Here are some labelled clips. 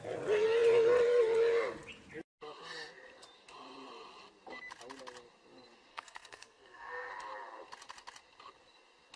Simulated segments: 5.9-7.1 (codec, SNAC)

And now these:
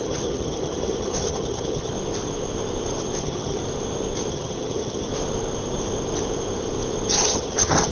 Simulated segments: 0.0-1.9 (vocoder, HiFi-GAN); 3.2-3.6; 4.3-5.1; 7.2-7.9

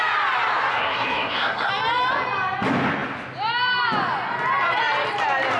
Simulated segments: 0.7-1.7 (codec, SNAC)

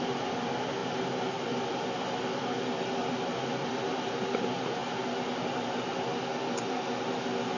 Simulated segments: none

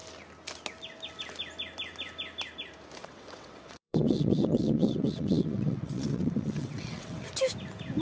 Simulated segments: 3.0-7.3 (vocoder, WaveNeXt)